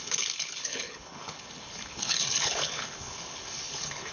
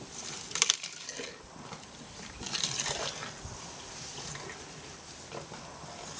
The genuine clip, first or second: second